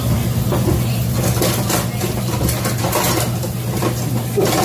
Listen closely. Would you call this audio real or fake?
real